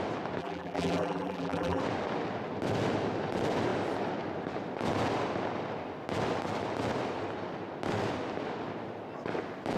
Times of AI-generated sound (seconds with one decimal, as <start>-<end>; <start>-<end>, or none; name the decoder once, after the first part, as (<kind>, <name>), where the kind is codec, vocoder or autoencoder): 0.4-1.8 (vocoder, BigVGAN v2)